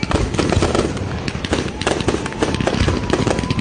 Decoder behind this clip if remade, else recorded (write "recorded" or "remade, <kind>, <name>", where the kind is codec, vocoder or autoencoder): recorded